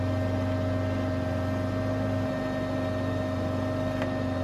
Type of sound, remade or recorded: recorded